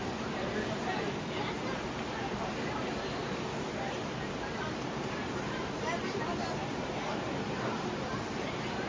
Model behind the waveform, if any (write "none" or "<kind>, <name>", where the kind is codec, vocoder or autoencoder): vocoder, BigVGAN v2